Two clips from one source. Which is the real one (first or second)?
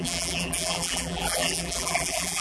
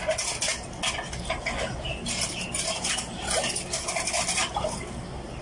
second